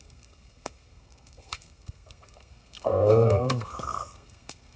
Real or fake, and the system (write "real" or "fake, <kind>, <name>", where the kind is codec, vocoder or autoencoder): fake, codec, SNAC